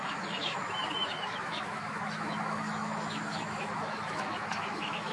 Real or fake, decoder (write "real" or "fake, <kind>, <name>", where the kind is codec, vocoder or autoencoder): fake, autoencoder, DAC-VAE